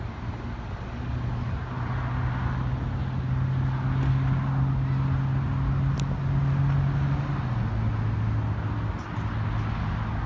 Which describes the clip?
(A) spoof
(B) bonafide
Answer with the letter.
B